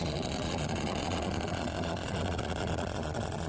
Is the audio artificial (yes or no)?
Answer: yes